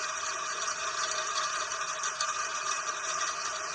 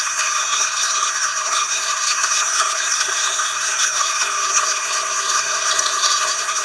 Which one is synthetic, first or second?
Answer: second